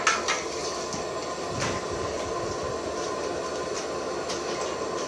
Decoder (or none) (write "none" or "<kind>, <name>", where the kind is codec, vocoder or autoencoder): none